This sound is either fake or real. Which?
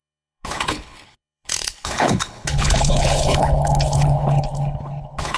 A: fake